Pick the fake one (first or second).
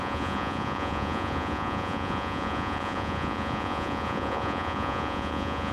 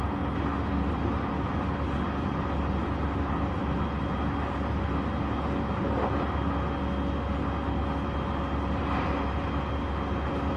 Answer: first